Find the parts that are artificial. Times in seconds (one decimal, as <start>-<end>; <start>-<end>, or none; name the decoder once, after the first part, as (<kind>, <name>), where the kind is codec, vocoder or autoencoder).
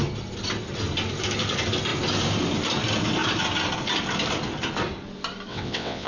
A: 5.5-6.1 (vocoder, WaveNeXt)